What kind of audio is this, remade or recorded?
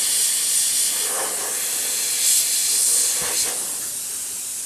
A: recorded